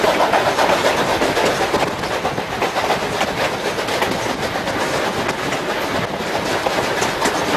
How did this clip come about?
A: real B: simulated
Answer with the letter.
A